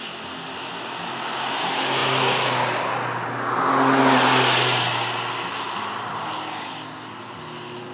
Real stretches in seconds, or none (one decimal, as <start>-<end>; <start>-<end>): 0.0-7.9